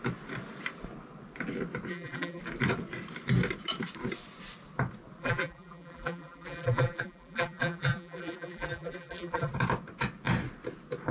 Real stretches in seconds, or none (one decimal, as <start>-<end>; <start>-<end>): 0.0-1.9; 2.4-5.2; 9.5-11.1